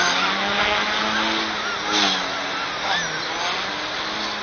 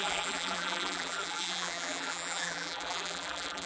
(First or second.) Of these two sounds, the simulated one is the second